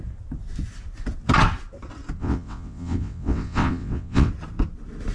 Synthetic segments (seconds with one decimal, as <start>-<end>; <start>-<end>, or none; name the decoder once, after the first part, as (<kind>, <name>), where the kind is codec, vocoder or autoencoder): 2.2-4.3 (vocoder, WaveNeXt)